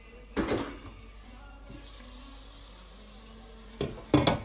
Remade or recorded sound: recorded